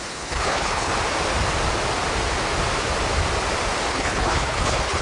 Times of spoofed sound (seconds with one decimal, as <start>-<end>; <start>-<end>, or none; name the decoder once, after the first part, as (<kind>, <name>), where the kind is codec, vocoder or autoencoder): 0.0-0.9 (codec, HILCodec); 3.9-5.0